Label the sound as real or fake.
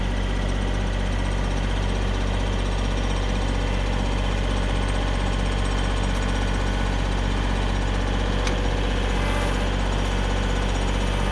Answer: real